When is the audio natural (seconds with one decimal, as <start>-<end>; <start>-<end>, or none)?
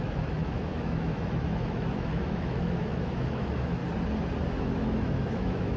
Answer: 3.8-4.6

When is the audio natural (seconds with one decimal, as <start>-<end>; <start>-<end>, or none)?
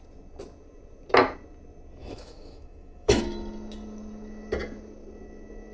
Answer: 0.0-2.0; 3.2-5.7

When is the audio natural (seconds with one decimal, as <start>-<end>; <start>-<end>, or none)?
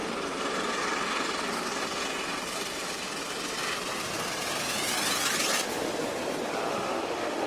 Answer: 0.0-6.7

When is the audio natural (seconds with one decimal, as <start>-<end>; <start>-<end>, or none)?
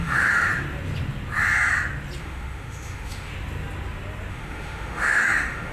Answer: 0.5-2.2; 3.3-4.3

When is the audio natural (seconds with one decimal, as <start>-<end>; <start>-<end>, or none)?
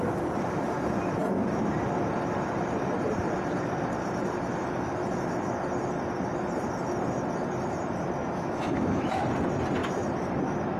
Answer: 0.0-8.2; 9.2-10.8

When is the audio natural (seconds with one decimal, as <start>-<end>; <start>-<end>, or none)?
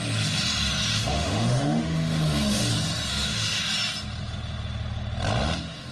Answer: 0.0-0.9; 2.7-3.1; 3.6-5.9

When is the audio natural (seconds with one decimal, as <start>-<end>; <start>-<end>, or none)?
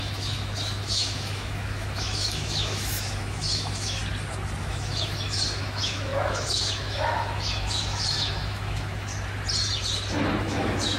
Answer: 4.0-4.6; 9.1-10.4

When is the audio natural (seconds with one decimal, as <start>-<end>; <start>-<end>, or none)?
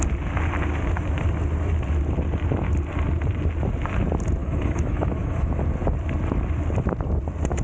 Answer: 0.0-4.4; 5.6-7.6